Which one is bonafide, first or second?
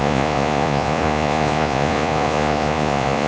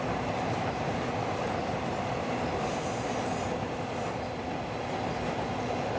second